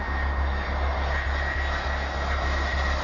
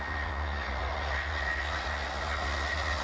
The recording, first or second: first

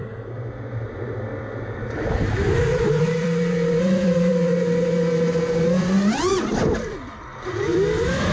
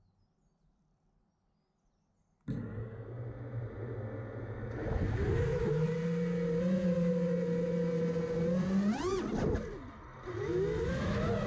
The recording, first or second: second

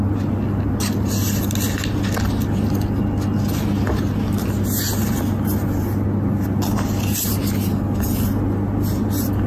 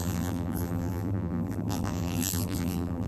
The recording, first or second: first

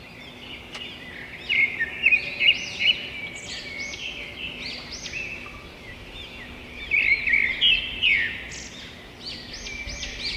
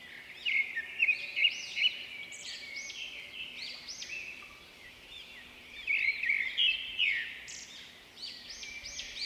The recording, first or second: first